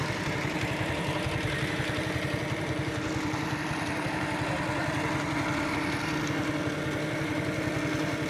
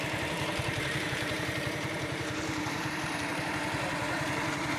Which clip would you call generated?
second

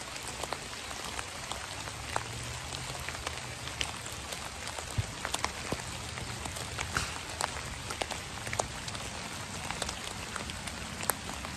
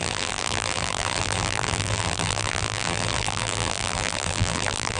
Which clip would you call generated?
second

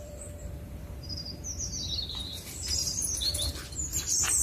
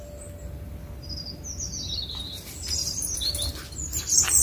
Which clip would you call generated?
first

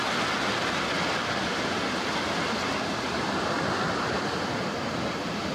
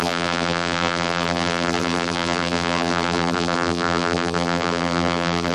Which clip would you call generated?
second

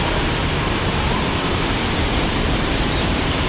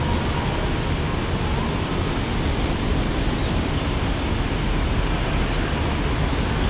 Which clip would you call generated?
first